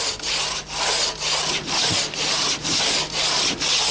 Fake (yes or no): no